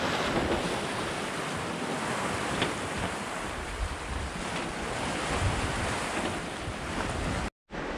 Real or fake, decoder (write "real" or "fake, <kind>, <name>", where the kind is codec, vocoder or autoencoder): real